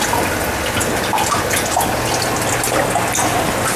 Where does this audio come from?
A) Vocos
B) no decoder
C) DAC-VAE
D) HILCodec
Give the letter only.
B